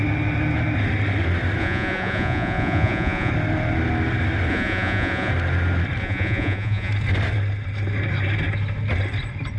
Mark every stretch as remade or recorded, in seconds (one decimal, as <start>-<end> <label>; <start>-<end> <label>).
0.0-1.6 recorded; 1.6-3.3 remade; 3.3-4.5 recorded; 4.5-5.3 remade; 5.3-6.0 recorded; 6.0-6.9 remade; 6.9-9.6 recorded